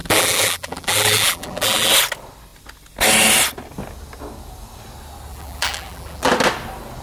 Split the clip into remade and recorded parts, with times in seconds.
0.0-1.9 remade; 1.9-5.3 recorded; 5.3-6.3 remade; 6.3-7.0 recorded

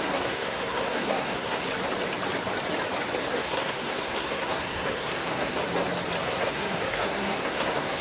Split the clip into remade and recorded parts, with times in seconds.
0.0-1.7 remade; 1.7-3.3 recorded; 3.3-5.6 remade; 5.6-6.2 recorded; 6.2-8.0 remade

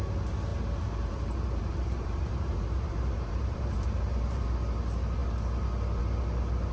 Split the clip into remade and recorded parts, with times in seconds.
0.0-0.5 recorded; 0.5-4.5 remade; 4.5-6.7 recorded

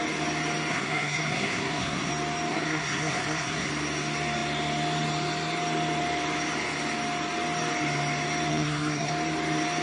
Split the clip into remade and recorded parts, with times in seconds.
0.0-0.7 recorded; 0.7-2.1 remade; 2.1-2.5 recorded; 2.5-3.7 remade; 3.7-8.5 recorded; 8.5-9.1 remade; 9.1-9.8 recorded

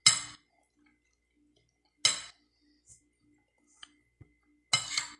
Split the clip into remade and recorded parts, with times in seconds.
0.0-5.2 recorded

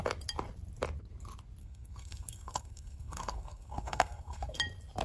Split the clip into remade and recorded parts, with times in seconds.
0.0-1.6 recorded; 1.6-4.6 remade; 4.6-5.0 recorded

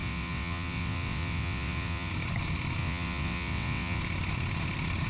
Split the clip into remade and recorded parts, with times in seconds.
0.0-2.1 remade; 2.1-2.8 recorded; 2.8-4.0 remade; 4.0-5.1 recorded

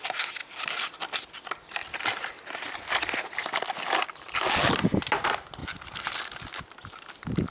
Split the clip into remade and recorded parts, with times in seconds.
0.0-7.5 recorded